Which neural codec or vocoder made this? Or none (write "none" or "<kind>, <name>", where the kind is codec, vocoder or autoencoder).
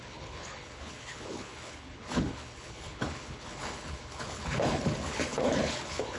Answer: codec, HILCodec